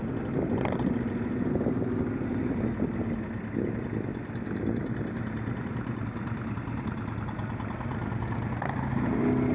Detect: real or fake real